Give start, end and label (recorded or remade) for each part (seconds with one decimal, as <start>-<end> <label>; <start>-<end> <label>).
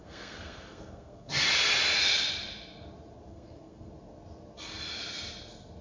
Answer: 0.0-1.3 remade; 1.3-3.3 recorded; 3.3-3.9 remade; 3.9-5.8 recorded